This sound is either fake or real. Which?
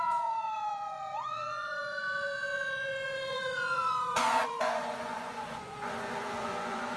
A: fake